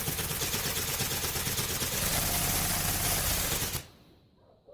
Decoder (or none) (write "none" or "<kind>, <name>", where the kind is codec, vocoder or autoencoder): none